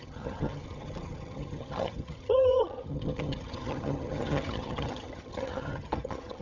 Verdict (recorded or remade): remade